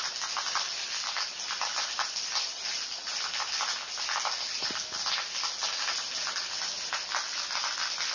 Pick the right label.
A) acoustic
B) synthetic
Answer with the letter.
A